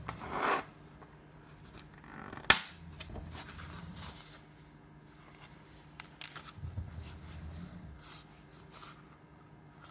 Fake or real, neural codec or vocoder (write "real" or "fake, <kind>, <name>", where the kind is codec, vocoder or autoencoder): real